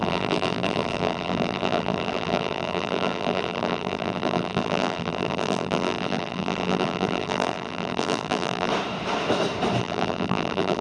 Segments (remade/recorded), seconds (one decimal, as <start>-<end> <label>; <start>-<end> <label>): 0.0-8.7 remade; 8.7-9.8 recorded; 9.8-10.8 remade